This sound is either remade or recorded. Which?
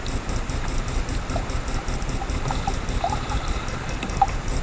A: recorded